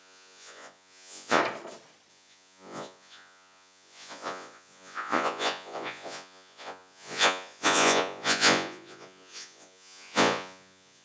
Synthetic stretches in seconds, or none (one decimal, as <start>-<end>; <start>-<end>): 0.0-1.4; 2.1-11.0